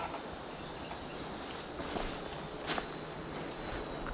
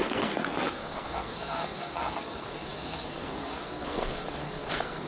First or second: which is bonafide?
first